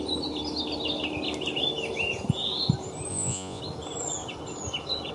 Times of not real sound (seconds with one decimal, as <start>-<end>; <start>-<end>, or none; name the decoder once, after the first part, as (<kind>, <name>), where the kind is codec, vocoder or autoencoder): 3.1-3.6 (vocoder, Vocos)